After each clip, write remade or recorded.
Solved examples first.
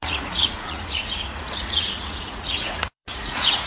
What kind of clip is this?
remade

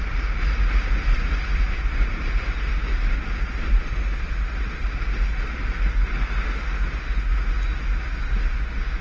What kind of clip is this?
recorded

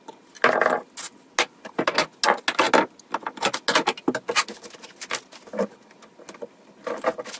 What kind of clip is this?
recorded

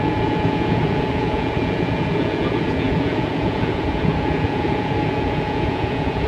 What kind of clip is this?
remade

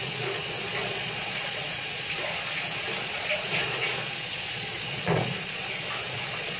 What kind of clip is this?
remade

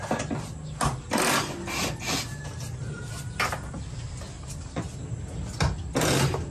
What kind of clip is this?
recorded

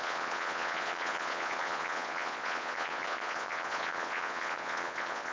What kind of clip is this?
remade